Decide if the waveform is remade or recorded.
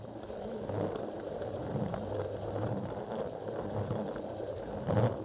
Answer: recorded